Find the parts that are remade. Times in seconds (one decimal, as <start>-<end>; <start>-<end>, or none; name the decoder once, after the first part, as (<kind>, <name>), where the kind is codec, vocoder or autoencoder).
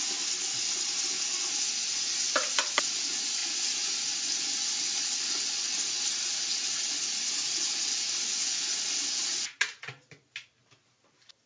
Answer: 3.4-3.9 (vocoder, Vocos)